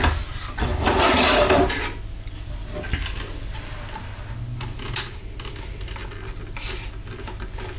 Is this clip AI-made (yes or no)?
no